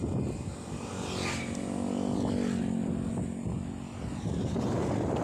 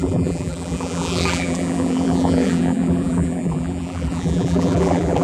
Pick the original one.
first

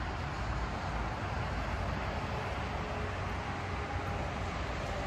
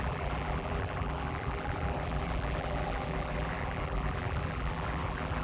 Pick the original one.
first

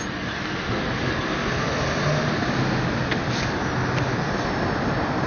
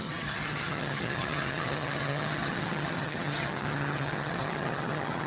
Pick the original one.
first